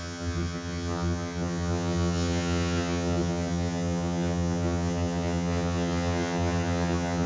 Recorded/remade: remade